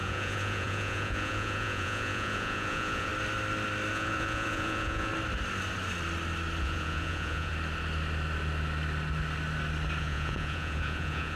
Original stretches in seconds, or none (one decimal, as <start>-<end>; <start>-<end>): 3.1-3.9; 5.1-6.6; 7.5-10.0

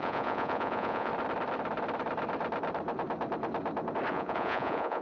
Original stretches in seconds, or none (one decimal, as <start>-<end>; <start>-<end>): 1.1-4.1

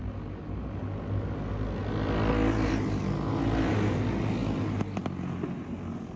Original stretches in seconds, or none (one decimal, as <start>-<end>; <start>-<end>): 0.0-6.2

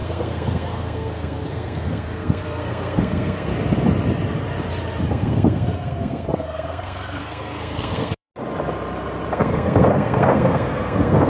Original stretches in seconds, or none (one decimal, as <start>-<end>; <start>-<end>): 3.5-5.1; 8.3-9.3

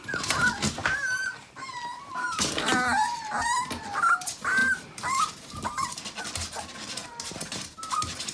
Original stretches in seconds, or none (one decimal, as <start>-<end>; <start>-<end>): 0.0-8.3

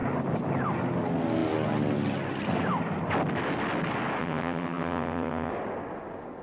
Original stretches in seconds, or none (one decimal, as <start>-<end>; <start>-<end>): 0.0-4.2; 5.5-6.4